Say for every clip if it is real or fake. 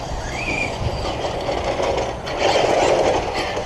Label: fake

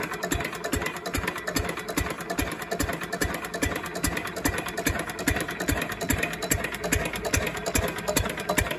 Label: real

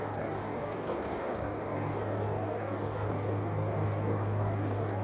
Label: fake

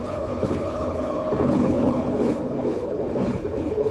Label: fake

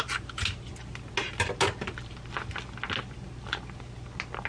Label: real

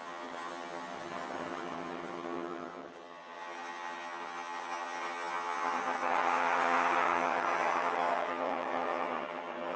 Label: fake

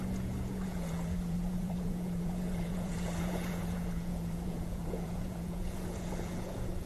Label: fake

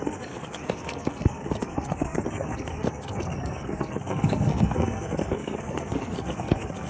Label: fake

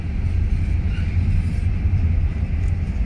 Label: real